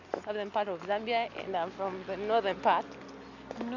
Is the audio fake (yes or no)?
no